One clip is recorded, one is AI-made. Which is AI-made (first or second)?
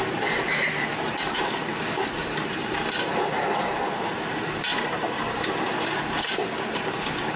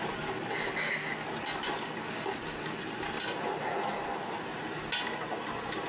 first